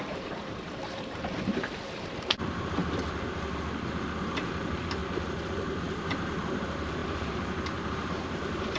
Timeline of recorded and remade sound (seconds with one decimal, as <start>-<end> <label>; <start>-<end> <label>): 0.0-2.8 remade; 2.8-4.2 recorded; 4.2-5.0 remade; 5.0-5.8 recorded; 5.8-8.8 remade